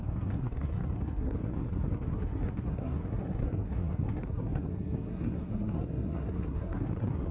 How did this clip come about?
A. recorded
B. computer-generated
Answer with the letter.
B